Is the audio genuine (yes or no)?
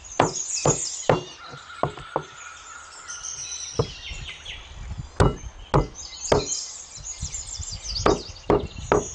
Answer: yes